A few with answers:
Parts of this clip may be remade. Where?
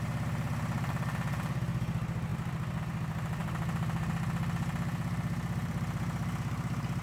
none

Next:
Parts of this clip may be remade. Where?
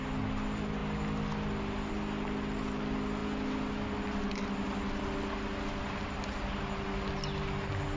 none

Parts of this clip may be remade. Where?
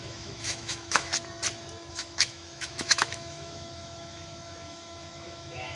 0.0-1.1 (autoencoder, DAC-VAE); 1.9-5.7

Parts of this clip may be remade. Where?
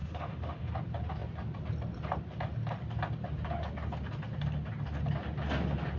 0.0-0.7 (autoencoder, DAC-VAE)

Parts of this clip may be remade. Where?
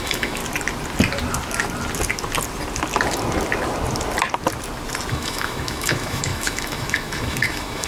0.0-0.4 (autoencoder, DAC-VAE); 5.1-7.9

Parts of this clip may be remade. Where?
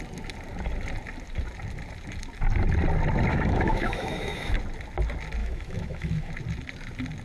3.3-4.6 (autoencoder, DAC-VAE); 5.4-6.3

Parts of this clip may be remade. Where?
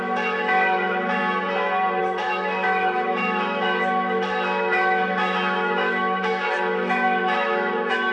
0.0-1.2 (autoencoder, DAC-VAE); 2.0-8.1